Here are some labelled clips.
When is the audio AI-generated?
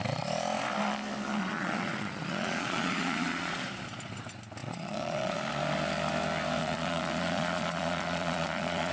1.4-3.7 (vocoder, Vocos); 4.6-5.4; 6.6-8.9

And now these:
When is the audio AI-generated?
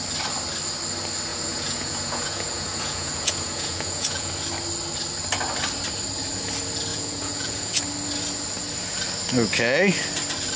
1.3-4.3 (vocoder, Vocos); 6.9-7.8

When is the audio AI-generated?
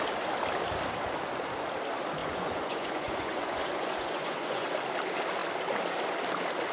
2.2-4.7 (vocoder, Vocos)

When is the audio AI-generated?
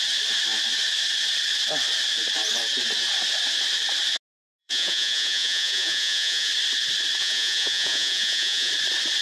4.6-6.5 (vocoder, Vocos); 7.2-8.7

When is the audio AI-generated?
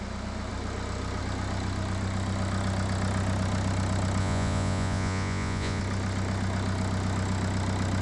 4.2-5.8 (vocoder, Vocos)